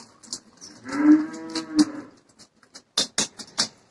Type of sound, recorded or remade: recorded